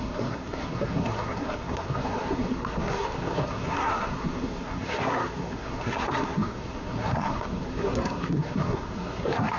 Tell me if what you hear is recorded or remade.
remade